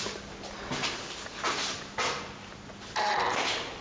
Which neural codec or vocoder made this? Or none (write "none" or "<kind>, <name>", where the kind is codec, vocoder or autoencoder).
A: none